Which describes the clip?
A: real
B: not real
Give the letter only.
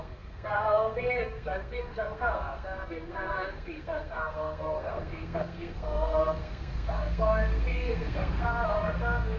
B